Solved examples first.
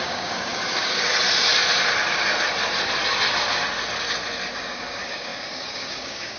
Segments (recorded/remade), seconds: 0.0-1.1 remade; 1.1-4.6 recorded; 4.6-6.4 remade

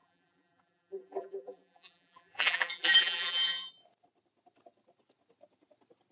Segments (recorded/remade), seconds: 0.0-3.7 remade; 3.7-6.1 recorded